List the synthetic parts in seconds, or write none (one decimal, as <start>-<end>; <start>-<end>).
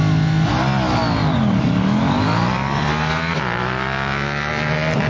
1.2-3.3